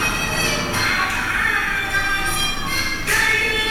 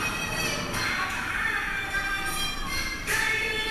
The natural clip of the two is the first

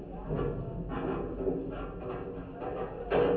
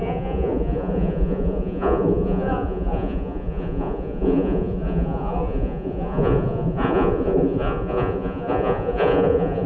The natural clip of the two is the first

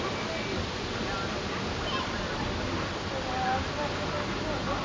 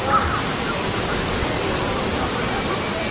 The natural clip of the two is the first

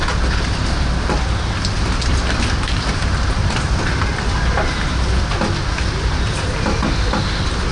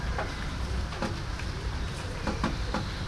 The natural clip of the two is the first